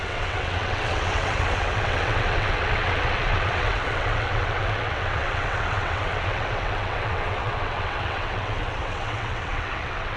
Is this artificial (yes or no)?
yes